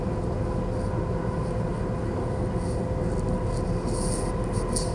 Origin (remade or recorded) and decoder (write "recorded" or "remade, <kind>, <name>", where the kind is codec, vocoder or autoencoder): recorded